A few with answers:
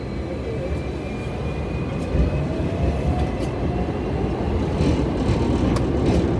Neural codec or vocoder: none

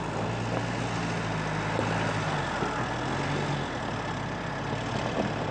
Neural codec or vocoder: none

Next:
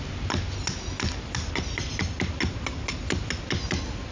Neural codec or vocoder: none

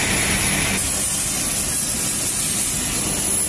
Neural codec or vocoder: none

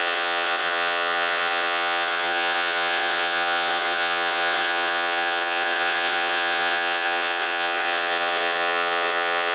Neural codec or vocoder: vocoder, WaveNeXt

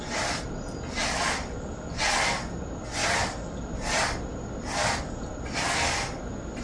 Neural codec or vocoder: none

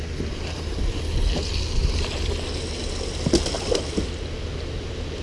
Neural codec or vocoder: none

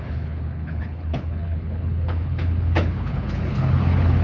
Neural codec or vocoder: codec, HILCodec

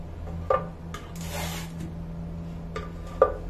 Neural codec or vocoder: none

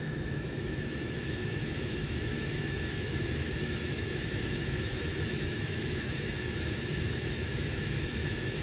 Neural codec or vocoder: autoencoder, DAC-VAE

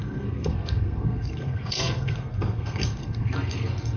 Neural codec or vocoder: codec, SNAC